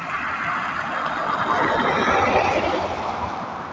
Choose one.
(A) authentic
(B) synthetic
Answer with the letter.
A